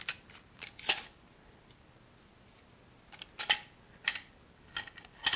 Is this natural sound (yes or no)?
yes